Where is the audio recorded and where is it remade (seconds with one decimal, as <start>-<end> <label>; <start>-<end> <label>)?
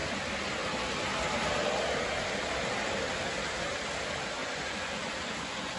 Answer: 0.0-4.4 recorded; 4.4-5.8 remade